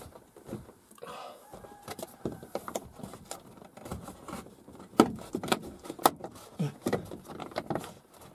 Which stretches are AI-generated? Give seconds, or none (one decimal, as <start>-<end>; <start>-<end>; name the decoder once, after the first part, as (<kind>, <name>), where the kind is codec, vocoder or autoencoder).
0.0-3.9 (vocoder, BigVGAN v2); 6.8-8.3